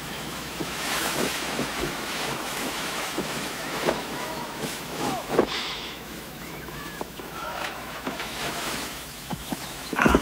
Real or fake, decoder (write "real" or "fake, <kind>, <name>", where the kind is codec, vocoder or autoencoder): fake, autoencoder, DAC-VAE